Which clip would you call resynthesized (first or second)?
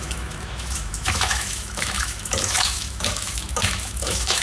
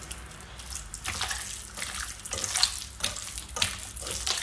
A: first